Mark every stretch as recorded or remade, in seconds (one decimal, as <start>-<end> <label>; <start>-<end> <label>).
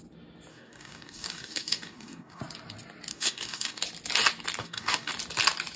0.0-0.5 recorded; 0.5-2.4 remade; 2.4-3.1 recorded; 3.1-3.8 remade; 3.8-4.6 recorded; 4.6-5.1 remade; 5.1-5.8 recorded